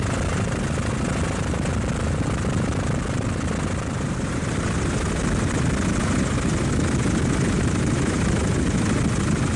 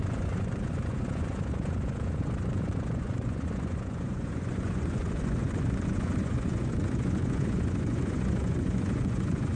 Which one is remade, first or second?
second